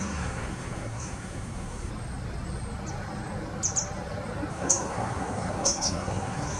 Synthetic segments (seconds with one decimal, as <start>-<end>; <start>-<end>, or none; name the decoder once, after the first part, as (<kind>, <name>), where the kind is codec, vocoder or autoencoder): 0.0-1.9 (codec, SNAC); 4.5-6.6